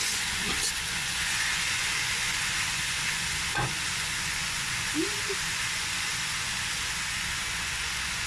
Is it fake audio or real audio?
fake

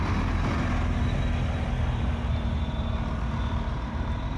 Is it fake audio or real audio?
real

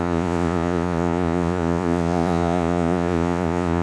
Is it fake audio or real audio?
fake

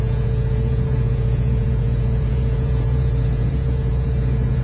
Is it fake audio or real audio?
fake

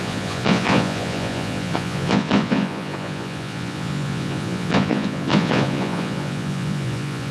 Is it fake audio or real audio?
fake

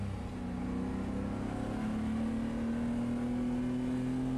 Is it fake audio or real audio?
real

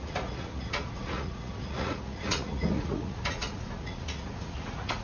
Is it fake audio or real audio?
fake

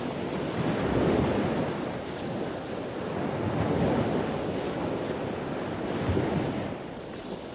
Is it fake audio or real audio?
real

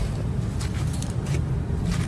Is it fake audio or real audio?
real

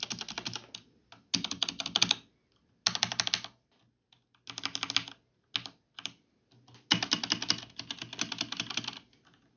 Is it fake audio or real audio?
real